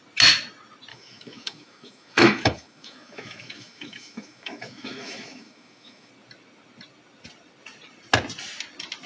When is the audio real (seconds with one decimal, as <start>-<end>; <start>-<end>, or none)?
0.0-0.9; 6.1-9.1